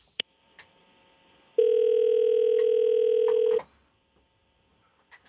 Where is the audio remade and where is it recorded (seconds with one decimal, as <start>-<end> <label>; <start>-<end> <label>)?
0.0-0.8 remade; 0.8-5.3 recorded